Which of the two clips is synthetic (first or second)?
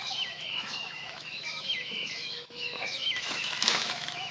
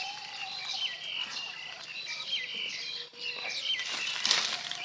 first